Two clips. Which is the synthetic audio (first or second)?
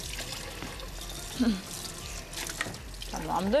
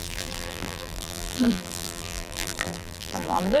second